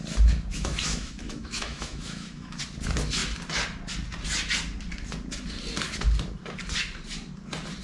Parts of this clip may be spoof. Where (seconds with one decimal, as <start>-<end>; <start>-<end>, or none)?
0.5-2.6